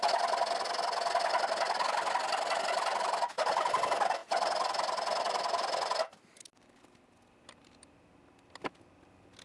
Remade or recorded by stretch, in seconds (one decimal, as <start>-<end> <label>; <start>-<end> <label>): 0.0-9.4 recorded